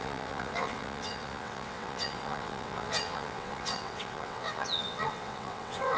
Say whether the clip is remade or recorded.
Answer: remade